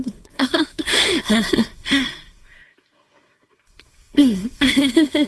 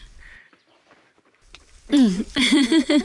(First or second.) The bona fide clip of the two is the second